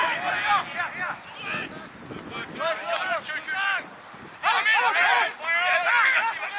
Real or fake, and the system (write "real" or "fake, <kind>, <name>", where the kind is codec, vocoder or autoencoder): real